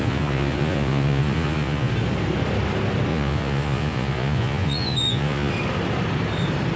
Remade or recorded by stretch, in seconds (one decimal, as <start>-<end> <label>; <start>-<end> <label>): 0.0-1.9 remade; 1.9-3.1 recorded; 3.1-5.5 remade; 5.5-6.8 recorded